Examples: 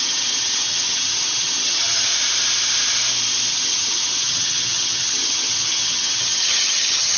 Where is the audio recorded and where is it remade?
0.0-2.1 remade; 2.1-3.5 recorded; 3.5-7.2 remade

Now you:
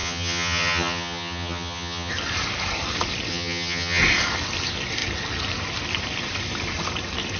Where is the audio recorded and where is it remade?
0.0-2.1 remade; 2.1-3.3 recorded; 3.3-4.0 remade; 4.0-7.4 recorded

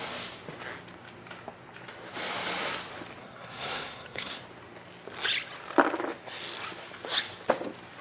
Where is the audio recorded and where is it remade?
0.0-3.2 recorded; 3.2-4.4 remade; 4.4-8.0 recorded

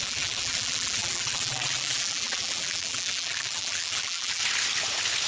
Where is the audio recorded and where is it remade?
0.0-4.4 remade; 4.4-5.3 recorded

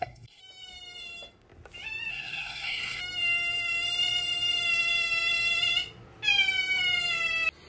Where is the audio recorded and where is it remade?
0.0-0.4 remade; 0.4-2.1 recorded; 2.1-3.0 remade; 3.0-7.7 recorded

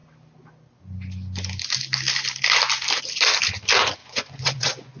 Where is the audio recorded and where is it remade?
0.0-4.0 recorded; 4.0-5.0 remade